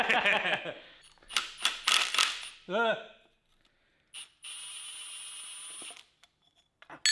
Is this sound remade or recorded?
recorded